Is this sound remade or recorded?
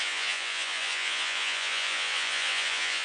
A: remade